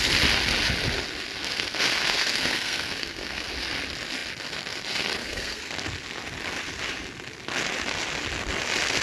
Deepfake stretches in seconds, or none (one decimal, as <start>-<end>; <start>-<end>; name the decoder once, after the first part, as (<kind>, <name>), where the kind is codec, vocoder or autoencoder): 1.4-3.5 (codec, SNAC); 5.2-5.7